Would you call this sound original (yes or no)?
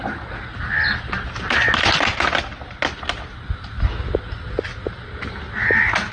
yes